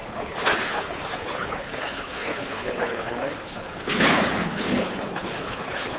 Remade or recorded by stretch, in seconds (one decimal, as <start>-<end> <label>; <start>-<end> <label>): 0.0-6.0 remade